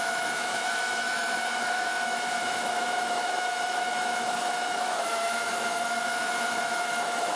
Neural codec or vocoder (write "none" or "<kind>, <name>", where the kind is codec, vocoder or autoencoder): autoencoder, DAC-VAE